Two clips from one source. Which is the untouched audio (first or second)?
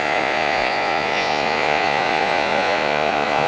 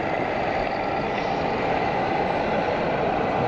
second